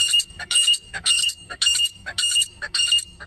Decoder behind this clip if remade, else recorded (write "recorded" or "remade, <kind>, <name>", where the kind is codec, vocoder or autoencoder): remade, codec, SNAC